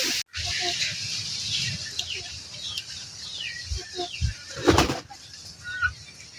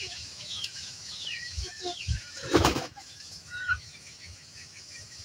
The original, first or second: first